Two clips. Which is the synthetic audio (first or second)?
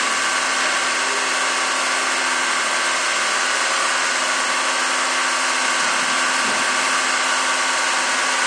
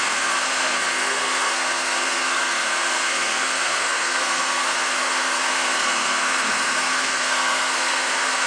second